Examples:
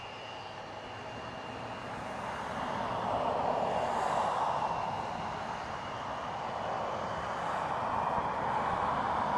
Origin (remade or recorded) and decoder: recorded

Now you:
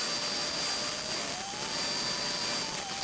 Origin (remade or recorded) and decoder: recorded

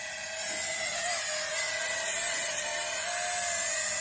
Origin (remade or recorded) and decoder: recorded